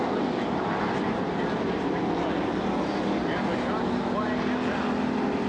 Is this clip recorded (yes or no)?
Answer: yes